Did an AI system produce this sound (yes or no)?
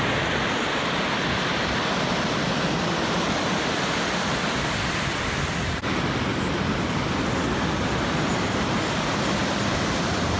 no